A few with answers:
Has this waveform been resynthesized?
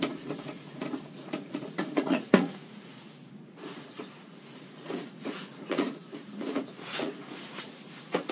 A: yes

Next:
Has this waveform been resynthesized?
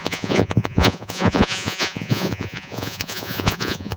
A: yes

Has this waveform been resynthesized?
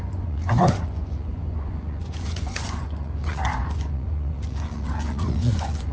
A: yes